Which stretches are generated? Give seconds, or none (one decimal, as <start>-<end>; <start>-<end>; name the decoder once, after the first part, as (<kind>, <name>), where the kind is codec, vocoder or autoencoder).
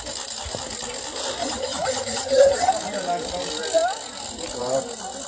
1.4-2.7 (vocoder, HiFi-GAN)